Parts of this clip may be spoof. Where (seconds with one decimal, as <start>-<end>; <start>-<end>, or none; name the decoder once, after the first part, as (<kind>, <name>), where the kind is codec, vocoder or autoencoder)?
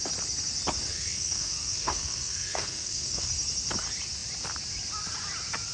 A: 0.9-3.3 (codec, SNAC)